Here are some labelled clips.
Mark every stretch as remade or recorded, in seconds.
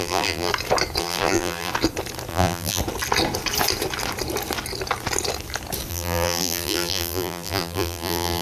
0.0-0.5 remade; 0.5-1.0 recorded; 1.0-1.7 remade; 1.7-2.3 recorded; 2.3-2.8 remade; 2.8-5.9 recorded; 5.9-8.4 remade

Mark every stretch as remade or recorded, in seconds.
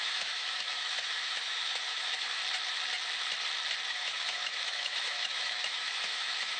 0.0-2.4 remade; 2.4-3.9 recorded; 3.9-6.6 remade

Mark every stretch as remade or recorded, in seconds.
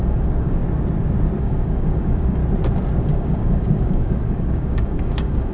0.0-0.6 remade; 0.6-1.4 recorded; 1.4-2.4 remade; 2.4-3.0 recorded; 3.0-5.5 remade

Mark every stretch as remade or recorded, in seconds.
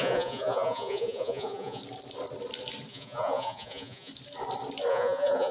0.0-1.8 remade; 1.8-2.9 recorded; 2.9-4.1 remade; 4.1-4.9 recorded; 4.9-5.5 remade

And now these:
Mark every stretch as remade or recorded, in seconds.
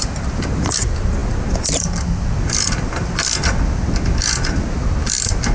0.0-5.5 recorded